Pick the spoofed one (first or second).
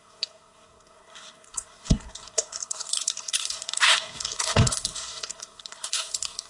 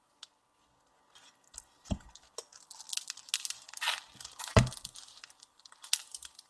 first